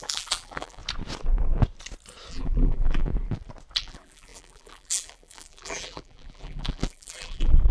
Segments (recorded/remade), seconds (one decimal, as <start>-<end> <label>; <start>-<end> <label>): 0.0-0.8 remade; 0.8-2.3 recorded; 2.3-3.1 remade; 3.1-3.8 recorded; 3.8-7.7 remade